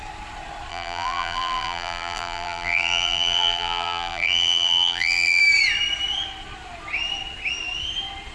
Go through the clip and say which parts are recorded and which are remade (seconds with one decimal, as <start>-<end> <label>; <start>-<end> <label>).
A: 0.0-0.7 recorded; 0.7-5.4 remade; 5.4-8.3 recorded